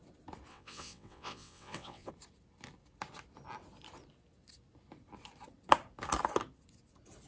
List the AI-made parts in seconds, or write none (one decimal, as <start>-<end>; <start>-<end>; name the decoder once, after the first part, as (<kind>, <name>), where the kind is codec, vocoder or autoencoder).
0.5-2.1 (vocoder, WaveNeXt)